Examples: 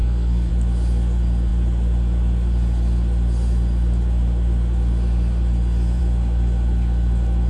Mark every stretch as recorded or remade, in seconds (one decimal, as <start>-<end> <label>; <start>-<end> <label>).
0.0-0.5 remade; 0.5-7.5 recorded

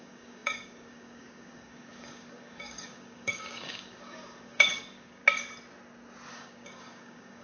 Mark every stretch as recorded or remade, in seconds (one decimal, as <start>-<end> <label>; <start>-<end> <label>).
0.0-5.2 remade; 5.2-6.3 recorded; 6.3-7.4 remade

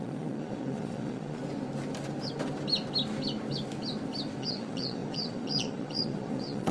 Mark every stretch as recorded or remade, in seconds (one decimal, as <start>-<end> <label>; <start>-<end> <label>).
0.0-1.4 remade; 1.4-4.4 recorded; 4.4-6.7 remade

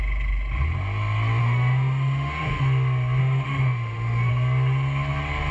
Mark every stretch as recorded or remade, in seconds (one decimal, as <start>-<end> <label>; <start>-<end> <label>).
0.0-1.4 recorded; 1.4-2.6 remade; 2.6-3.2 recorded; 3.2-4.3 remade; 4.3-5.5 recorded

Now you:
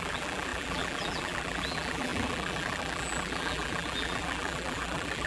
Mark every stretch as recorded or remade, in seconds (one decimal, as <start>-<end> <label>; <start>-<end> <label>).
0.0-5.3 remade

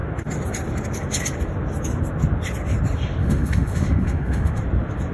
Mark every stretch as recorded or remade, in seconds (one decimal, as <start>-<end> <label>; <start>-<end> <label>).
0.0-3.2 recorded; 3.2-4.6 remade; 4.6-5.1 recorded